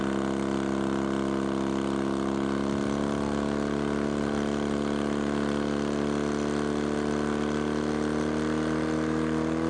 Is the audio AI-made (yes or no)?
no